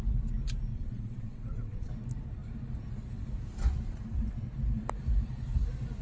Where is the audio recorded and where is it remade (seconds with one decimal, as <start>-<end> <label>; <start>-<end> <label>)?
0.0-0.7 recorded; 0.7-1.9 remade; 1.9-6.0 recorded